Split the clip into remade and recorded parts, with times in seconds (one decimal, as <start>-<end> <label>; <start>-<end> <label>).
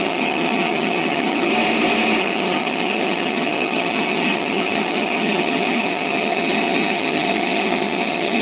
0.0-1.5 remade; 1.5-2.2 recorded; 2.2-8.4 remade